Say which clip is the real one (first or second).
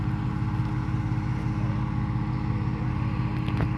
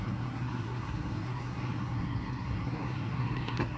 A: first